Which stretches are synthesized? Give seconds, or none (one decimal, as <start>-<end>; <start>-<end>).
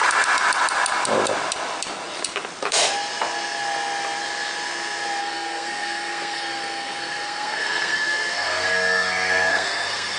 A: 5.2-10.2